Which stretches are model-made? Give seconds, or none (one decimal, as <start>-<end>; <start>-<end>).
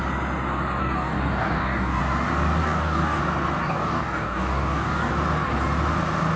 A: 0.8-2.0; 2.6-3.2; 3.6-5.1